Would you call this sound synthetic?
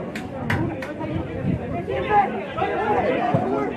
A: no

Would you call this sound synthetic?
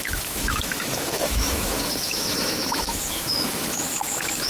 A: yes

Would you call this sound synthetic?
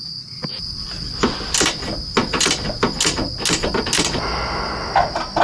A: no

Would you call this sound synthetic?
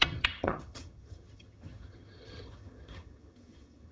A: yes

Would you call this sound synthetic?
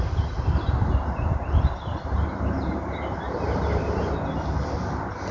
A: no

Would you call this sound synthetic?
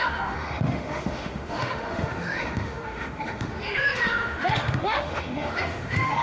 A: yes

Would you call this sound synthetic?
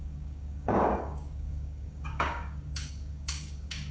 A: yes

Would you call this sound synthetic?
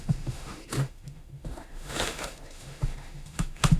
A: yes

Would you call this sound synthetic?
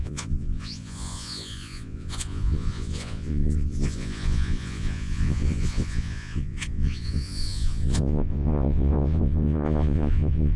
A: yes